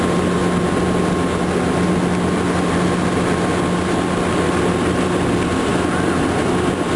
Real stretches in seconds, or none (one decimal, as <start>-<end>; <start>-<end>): 0.4-4.6; 5.7-6.2

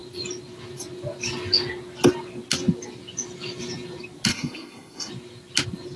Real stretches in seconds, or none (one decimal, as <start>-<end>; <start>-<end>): 0.0-4.3; 5.1-6.0

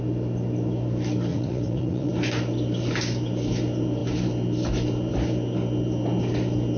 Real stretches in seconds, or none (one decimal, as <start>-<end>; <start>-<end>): 0.0-1.3; 2.1-6.8

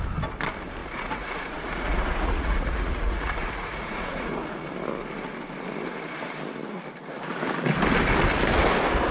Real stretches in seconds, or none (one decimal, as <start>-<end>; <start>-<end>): 0.0-0.8; 4.6-9.1

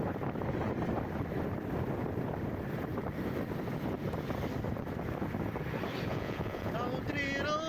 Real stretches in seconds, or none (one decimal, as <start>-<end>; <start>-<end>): 0.0-6.1; 6.7-7.7

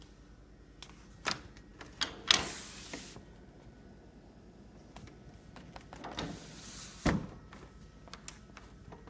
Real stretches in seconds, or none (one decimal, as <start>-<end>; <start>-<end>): 0.0-9.1